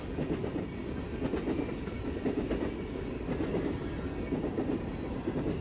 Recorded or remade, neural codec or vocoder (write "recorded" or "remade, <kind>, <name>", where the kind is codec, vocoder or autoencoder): recorded